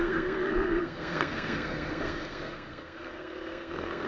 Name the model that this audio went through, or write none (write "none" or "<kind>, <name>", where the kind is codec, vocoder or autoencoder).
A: codec, SNAC